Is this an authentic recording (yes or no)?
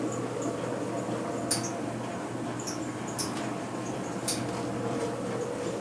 yes